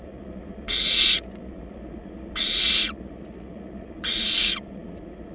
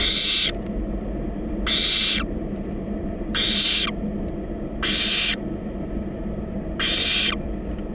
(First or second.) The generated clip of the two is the first